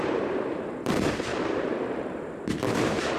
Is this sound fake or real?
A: fake